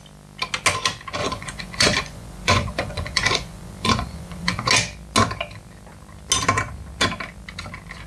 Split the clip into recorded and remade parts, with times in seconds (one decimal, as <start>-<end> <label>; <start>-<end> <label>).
0.0-1.2 recorded; 1.2-4.7 remade; 4.7-8.1 recorded